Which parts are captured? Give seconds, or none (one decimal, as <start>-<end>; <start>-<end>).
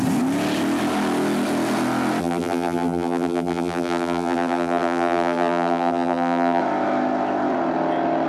0.0-2.2; 6.6-8.3